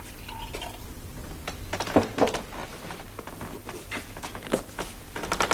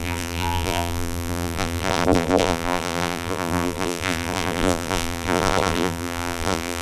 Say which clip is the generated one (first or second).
second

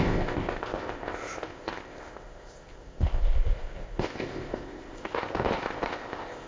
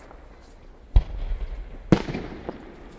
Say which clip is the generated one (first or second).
first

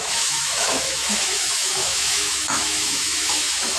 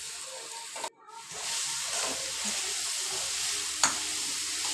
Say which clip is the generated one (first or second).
first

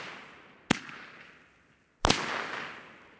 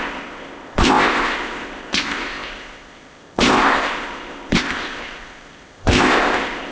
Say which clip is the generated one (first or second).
second